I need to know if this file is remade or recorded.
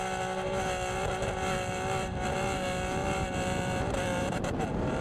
remade